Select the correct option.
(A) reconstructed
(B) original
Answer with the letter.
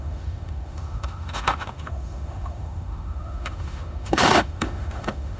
A